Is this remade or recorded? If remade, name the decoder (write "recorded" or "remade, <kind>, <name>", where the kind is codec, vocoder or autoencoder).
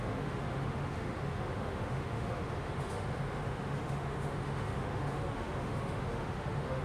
remade, autoencoder, DAC-VAE